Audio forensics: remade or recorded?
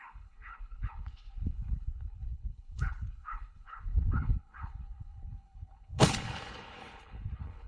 remade